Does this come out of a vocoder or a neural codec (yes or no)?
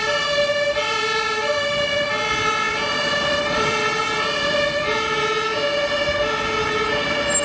no